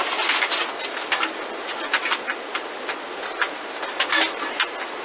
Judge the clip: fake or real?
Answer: real